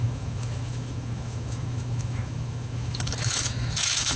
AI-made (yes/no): yes